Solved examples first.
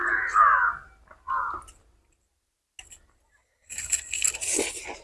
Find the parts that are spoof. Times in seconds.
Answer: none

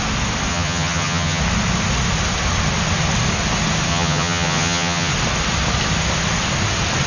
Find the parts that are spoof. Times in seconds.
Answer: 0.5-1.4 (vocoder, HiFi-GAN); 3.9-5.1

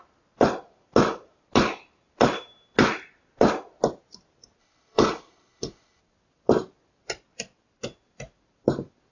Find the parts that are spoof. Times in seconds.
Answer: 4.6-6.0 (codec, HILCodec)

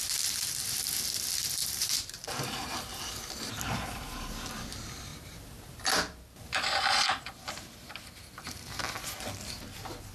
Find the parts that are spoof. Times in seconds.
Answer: 1.6-3.1 (vocoder, BigVGAN v2)

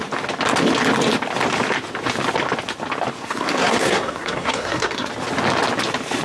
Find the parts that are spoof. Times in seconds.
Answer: 3.2-5.1 (codec, SNAC)